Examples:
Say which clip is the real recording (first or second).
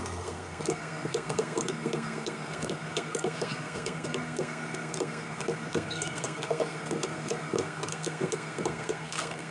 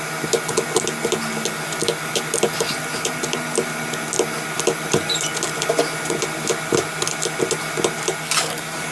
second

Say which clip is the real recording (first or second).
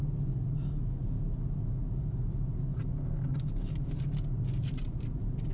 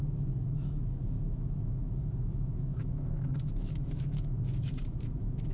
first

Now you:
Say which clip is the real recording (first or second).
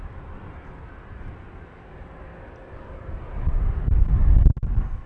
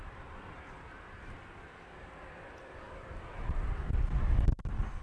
first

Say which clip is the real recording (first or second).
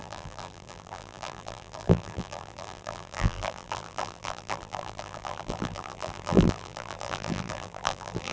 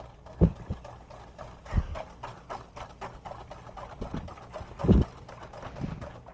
second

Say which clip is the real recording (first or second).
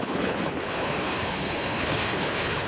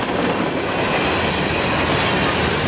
second